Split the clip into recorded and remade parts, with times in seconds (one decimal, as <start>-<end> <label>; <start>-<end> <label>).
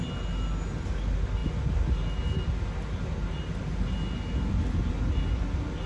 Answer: 0.0-5.9 recorded